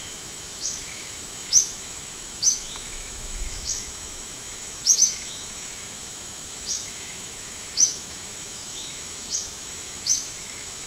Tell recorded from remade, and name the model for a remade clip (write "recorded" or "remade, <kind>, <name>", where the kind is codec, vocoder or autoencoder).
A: remade, autoencoder, DAC-VAE